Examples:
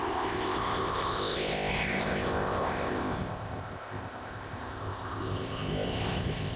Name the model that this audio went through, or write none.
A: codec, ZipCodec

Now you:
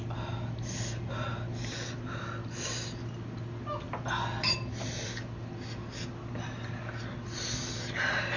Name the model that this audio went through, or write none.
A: none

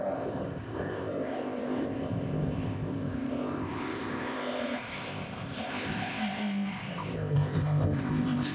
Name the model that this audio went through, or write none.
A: codec, ZipCodec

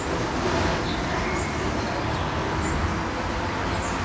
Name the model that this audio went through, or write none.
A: none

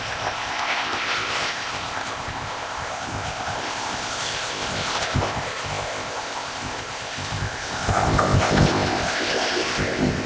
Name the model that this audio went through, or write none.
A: codec, ZipCodec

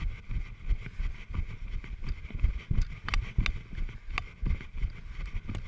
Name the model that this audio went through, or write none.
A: none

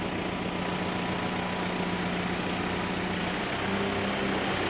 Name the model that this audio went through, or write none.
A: none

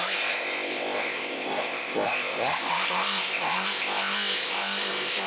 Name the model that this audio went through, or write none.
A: codec, ZipCodec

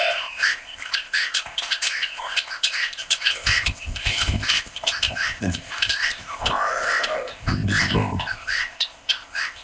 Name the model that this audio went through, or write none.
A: codec, ZipCodec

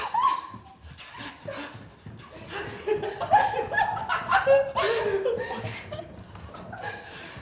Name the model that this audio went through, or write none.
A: none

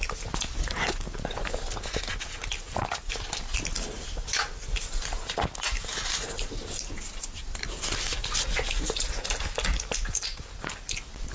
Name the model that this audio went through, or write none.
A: none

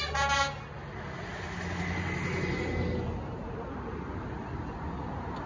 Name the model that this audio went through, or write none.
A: none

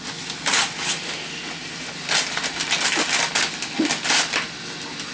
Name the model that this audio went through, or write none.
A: none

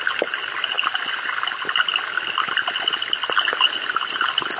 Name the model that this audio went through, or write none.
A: none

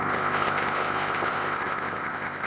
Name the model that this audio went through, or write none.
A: codec, ZipCodec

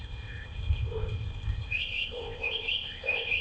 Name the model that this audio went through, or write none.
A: codec, ZipCodec